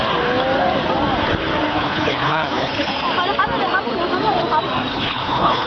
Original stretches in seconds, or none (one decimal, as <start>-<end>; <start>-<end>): 0.0-1.7; 2.9-4.9